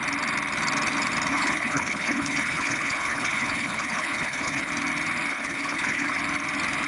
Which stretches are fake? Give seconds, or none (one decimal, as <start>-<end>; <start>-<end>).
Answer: 1.3-4.7; 5.3-6.2